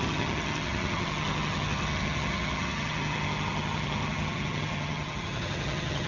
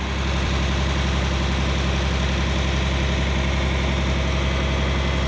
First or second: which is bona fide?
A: second